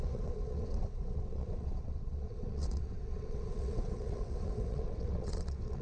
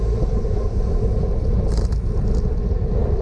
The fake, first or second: first